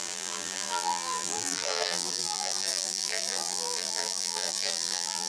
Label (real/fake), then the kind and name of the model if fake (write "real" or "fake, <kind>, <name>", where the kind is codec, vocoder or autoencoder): fake, vocoder, BigVGAN v2